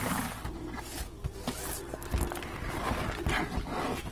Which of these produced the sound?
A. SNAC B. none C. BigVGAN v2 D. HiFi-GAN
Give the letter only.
B